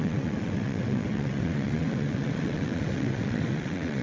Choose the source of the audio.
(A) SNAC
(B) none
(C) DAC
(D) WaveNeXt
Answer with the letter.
D